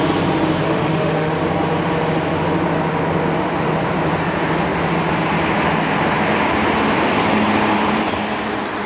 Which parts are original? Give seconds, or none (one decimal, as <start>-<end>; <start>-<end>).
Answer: 0.0-0.6; 1.3-8.9